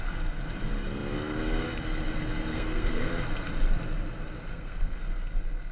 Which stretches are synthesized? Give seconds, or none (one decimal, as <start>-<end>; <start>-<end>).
2.5-3.1; 4.5-5.0